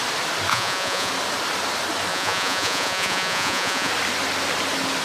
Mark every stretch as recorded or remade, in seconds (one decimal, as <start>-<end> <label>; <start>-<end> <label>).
0.0-0.5 recorded; 0.5-1.1 remade; 1.1-2.1 recorded; 2.1-3.9 remade; 3.9-5.0 recorded